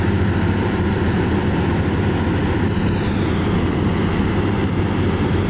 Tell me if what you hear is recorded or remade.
recorded